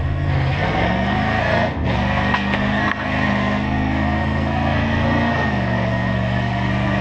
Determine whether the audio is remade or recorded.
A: remade